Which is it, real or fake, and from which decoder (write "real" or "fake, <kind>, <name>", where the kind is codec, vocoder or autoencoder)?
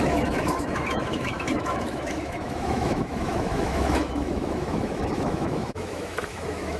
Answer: fake, autoencoder, DAC-VAE